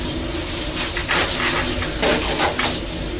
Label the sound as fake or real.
real